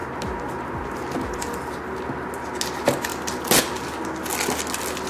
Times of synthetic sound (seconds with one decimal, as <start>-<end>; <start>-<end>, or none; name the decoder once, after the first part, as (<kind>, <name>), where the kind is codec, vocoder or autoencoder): none